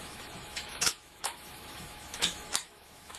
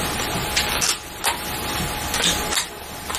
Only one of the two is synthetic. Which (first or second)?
first